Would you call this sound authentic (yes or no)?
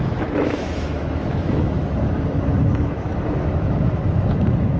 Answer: no